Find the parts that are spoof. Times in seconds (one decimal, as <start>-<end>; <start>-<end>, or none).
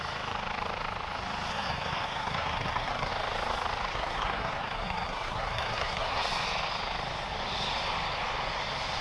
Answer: 1.5-3.1; 3.9-6.3